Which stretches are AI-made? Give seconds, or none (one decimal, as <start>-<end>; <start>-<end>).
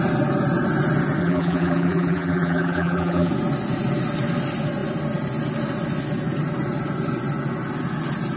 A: 1.2-3.3